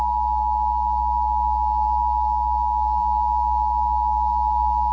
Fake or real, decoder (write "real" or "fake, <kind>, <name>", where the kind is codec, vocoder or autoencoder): fake, codec, DAC